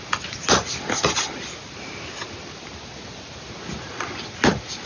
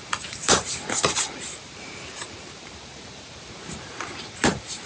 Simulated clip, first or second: second